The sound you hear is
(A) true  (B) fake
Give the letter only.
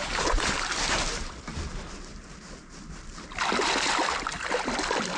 A